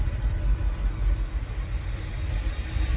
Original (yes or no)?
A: yes